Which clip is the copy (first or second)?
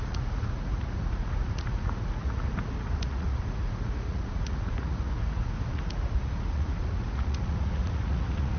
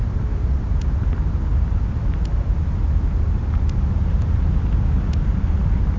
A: first